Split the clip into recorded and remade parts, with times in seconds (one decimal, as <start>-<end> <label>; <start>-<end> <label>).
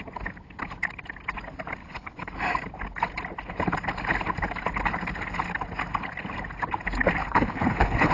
0.0-1.8 recorded; 1.8-2.3 remade; 2.3-7.2 recorded; 7.2-8.1 remade